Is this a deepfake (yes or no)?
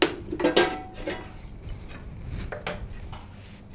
no